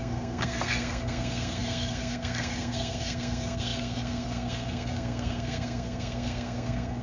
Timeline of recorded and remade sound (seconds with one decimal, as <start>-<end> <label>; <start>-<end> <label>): 0.0-7.0 remade